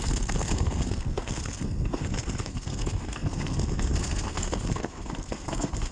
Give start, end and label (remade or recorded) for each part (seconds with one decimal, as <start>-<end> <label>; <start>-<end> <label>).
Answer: 0.0-5.9 remade